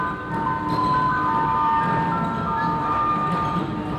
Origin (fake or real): real